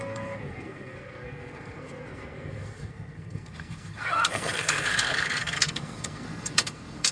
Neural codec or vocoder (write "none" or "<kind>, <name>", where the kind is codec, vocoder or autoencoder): codec, SNAC